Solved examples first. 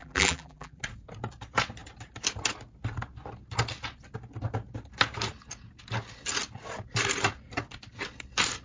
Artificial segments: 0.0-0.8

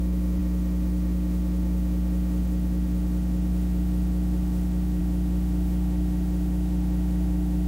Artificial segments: 0.0-7.7

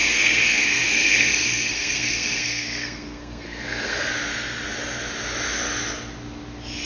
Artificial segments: 0.0-4.1